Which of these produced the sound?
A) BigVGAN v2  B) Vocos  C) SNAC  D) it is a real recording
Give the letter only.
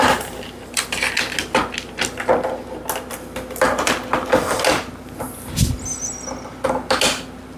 D